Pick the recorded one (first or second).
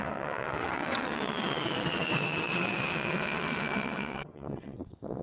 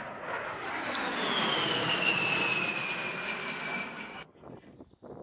second